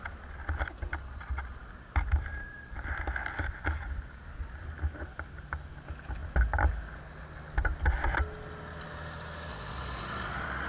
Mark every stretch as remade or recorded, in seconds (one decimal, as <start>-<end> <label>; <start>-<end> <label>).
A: 0.0-1.0 recorded; 1.0-1.6 remade; 1.6-9.5 recorded; 9.5-10.7 remade